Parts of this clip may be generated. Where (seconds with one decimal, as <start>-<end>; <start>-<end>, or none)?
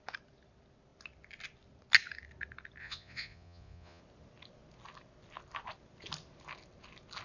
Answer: 2.8-4.0